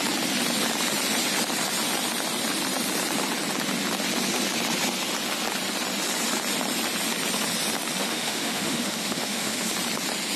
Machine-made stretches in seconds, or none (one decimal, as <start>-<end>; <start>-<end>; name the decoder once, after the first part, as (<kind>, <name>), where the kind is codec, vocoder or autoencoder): 8.0-9.7 (autoencoder, DAC-VAE)